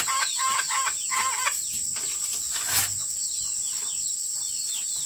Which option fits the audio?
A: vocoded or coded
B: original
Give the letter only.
B